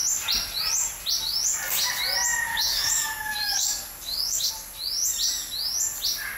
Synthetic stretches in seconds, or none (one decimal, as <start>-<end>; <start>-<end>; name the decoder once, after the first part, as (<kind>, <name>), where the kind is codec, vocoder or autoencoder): 2.5-4.5 (codec, DAC)